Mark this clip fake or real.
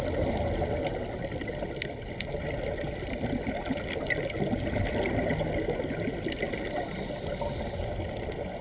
real